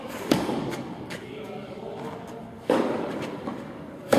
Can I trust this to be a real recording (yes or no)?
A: no